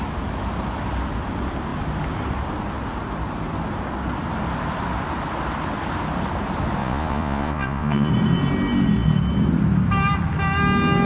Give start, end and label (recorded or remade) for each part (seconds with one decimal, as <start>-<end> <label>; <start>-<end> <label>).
0.0-6.8 recorded; 6.8-8.1 remade; 8.1-11.1 recorded